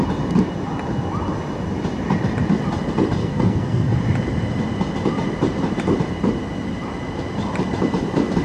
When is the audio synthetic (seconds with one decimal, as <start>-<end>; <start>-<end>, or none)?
3.2-4.0